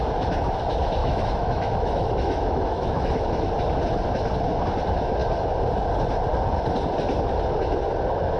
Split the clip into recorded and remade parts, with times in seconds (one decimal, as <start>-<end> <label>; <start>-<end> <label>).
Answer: 0.0-1.0 recorded; 1.0-3.5 remade; 3.5-8.4 recorded